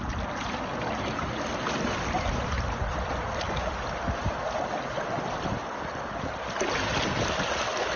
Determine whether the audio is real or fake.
real